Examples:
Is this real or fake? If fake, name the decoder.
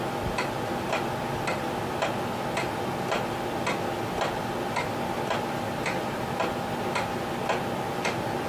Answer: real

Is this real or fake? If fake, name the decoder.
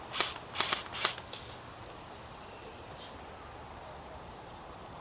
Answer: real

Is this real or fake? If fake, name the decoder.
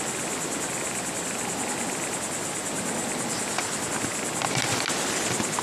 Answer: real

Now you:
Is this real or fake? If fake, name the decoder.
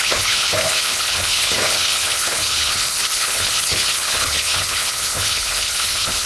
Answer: fake, codec, HILCodec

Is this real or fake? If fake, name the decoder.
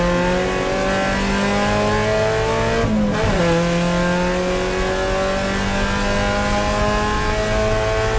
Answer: real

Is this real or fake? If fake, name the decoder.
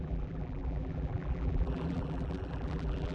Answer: fake, vocoder, BigVGAN v2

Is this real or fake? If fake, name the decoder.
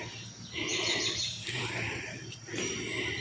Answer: real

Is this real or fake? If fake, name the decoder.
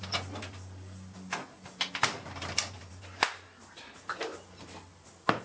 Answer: real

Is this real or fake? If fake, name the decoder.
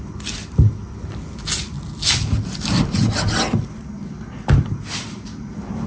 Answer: real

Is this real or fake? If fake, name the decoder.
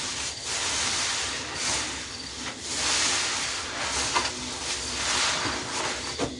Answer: real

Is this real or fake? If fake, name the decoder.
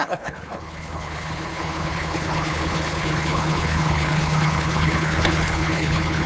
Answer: fake, codec, HILCodec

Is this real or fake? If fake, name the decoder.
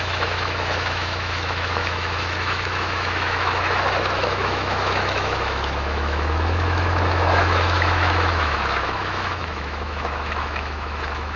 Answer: fake, autoencoder, DAC-VAE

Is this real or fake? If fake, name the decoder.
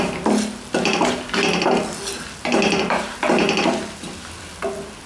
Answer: real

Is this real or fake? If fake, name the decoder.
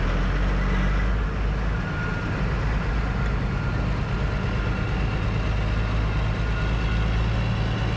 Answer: real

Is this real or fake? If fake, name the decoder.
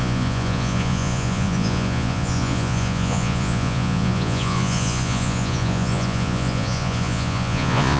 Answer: fake, vocoder, Vocos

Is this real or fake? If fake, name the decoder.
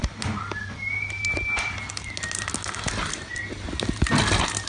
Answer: real